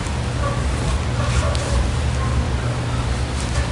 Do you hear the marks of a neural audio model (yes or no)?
no